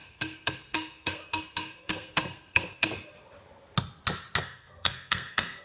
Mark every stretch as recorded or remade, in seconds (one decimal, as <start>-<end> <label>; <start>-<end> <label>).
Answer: 0.0-2.9 remade; 2.9-4.4 recorded; 4.4-5.6 remade